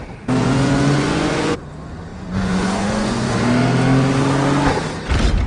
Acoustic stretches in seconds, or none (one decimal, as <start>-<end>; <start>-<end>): 0.0-0.4; 1.7-2.1; 3.3-5.5